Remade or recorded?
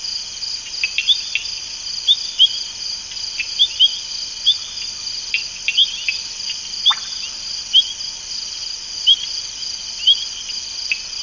recorded